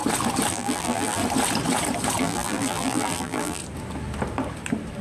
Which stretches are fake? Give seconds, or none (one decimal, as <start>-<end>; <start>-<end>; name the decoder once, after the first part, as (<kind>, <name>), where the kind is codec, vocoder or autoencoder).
0.5-1.2 (vocoder, BigVGAN v2); 2.2-3.6